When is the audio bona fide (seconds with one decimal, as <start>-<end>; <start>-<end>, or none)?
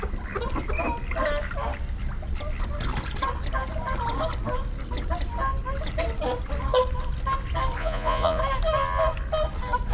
0.0-7.8; 8.4-9.9